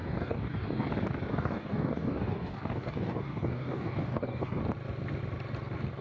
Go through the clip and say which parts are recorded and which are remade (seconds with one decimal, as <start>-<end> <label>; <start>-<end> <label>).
0.0-0.9 remade; 0.9-1.3 recorded; 1.3-4.6 remade; 4.6-6.0 recorded